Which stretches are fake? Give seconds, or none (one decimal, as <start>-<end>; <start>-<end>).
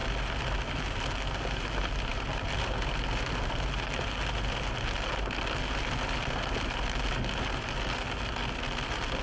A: none